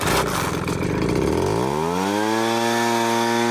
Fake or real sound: real